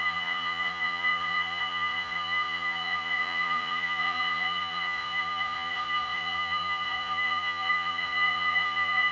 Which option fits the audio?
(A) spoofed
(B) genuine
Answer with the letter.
A